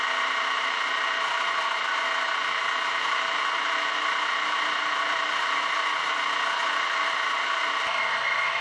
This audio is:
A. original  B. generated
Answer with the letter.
A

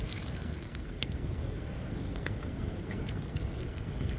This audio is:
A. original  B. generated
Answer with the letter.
B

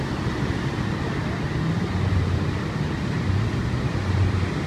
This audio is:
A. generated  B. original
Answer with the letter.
B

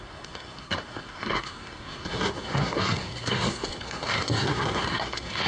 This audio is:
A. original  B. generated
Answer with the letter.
B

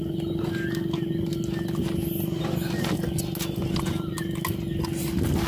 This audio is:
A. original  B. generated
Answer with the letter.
A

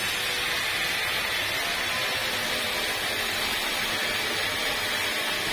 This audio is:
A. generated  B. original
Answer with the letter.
B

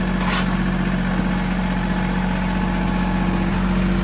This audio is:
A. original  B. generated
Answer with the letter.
A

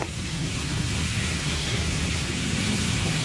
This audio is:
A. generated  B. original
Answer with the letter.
A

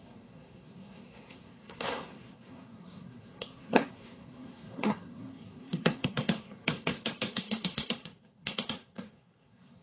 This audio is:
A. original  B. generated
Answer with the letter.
B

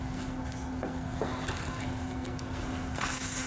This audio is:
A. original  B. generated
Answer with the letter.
B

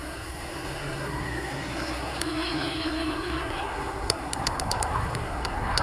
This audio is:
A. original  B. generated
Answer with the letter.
B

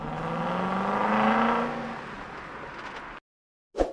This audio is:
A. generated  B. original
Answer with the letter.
B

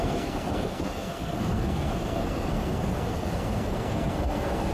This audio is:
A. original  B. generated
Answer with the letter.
B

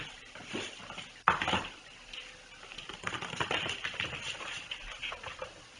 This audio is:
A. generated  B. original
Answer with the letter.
B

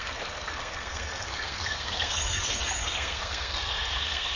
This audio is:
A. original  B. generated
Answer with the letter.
B